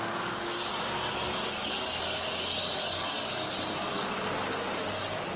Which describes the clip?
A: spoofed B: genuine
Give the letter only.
A